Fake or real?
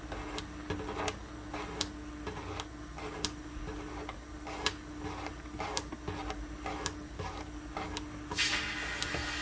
real